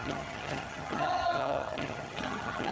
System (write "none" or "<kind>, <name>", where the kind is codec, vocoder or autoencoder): vocoder, HiFi-GAN